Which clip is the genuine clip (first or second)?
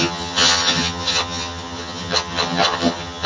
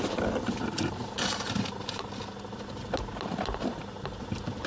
second